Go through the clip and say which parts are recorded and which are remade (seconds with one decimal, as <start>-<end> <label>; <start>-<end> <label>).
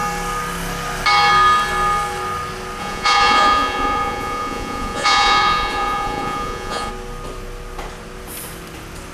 0.0-2.8 recorded; 2.8-6.9 remade; 6.9-9.1 recorded